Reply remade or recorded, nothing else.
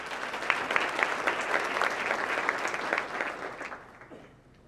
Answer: recorded